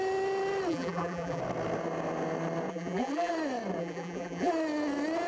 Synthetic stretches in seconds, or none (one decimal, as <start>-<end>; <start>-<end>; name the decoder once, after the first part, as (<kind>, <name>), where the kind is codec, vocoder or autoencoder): 0.7-1.4 (vocoder, BigVGAN v2); 2.7-3.3; 3.8-4.5